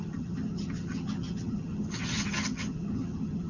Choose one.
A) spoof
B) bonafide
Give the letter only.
A